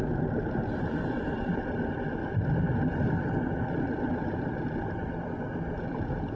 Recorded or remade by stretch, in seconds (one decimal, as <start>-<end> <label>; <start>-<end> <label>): 0.0-0.6 recorded; 0.6-1.6 remade; 1.6-6.4 recorded